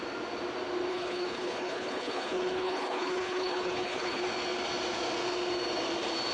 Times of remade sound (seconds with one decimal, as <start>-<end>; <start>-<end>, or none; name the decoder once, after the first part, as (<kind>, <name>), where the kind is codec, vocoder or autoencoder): 0.9-4.2 (codec, HILCodec)